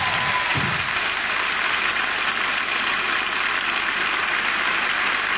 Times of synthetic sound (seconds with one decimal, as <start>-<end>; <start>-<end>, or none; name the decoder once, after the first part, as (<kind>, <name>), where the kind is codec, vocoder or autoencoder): none